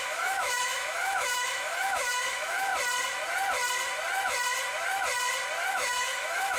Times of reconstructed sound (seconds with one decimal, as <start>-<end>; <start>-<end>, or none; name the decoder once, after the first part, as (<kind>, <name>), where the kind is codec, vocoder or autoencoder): 0.0-2.7 (autoencoder, DAC-VAE); 5.7-6.6